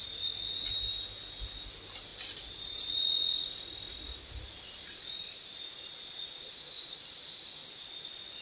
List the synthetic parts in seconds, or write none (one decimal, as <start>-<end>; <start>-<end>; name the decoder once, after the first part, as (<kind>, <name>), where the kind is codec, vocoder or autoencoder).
none